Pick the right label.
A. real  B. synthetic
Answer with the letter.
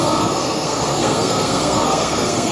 B